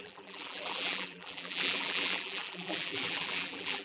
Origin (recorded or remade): remade